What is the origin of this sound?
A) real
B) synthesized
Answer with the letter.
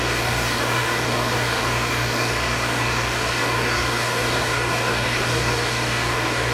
B